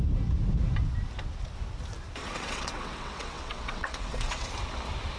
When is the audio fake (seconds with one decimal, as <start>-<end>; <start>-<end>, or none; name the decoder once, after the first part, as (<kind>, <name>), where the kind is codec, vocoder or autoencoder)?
2.2-4.5 (vocoder, WaveNeXt)